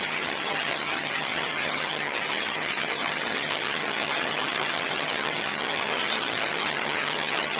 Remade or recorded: remade